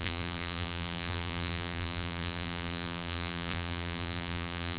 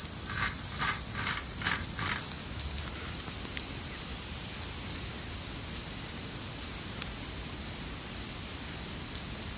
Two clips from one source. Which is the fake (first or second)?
first